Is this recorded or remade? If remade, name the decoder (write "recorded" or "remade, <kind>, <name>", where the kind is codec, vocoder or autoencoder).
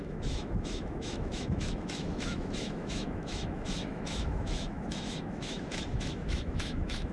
remade, autoencoder, DAC-VAE